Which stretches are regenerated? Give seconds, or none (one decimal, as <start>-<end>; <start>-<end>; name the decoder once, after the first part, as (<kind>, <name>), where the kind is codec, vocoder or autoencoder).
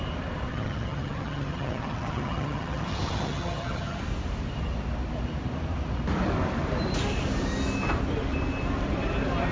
0.5-4.0 (vocoder, HiFi-GAN)